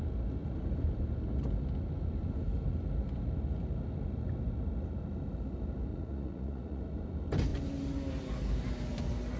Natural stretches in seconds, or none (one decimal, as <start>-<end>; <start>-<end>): 0.0-5.9; 6.8-9.4